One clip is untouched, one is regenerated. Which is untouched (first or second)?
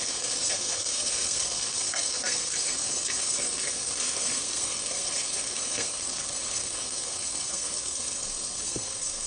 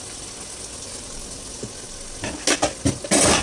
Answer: second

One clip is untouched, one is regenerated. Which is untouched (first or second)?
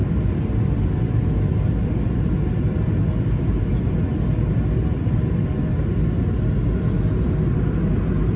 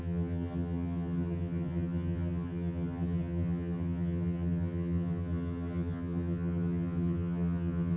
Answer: first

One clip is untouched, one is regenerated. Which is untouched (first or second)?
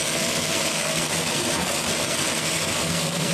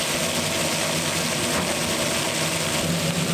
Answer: second